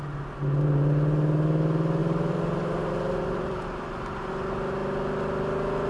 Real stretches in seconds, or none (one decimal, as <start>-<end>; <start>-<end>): 0.0-2.0; 4.3-5.9